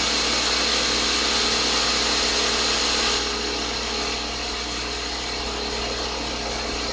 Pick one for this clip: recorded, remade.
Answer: recorded